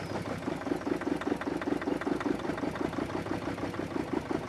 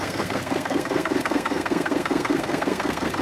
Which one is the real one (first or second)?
first